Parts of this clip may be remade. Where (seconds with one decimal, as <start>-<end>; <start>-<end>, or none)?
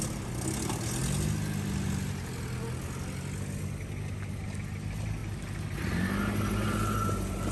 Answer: none